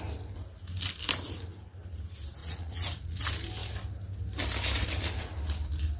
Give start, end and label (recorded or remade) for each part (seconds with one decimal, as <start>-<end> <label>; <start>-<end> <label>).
0.0-2.4 recorded; 2.4-3.2 remade; 3.2-6.0 recorded